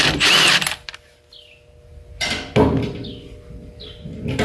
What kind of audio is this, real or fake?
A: real